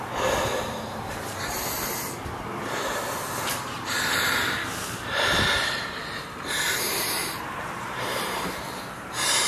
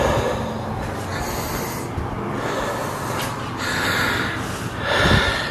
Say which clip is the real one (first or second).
second